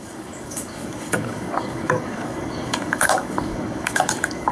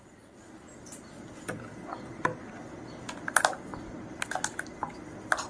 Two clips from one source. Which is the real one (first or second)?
second